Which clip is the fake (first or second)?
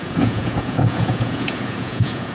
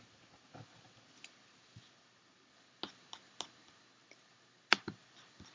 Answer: first